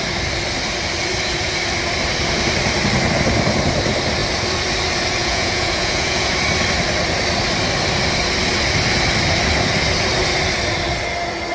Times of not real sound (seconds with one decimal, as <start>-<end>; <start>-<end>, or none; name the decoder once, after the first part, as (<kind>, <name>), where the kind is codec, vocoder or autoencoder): 5.2-6.3 (vocoder, Vocos)